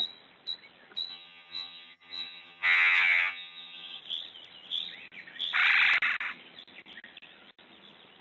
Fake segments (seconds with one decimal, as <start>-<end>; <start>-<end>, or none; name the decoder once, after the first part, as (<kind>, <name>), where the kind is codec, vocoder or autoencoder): 1.1-4.0 (vocoder, HiFi-GAN)